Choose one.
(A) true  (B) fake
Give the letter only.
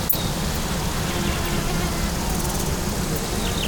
A